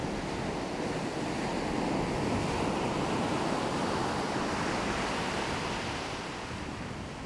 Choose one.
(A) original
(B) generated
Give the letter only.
A